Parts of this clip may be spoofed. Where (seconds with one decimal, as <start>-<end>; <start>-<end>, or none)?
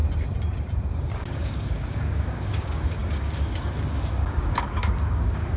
1.0-5.6